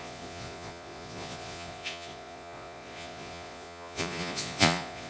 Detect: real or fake fake